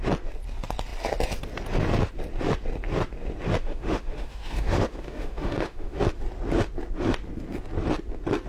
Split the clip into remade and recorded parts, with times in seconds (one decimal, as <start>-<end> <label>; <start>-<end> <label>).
0.0-3.6 recorded; 3.6-6.0 remade; 6.0-8.5 recorded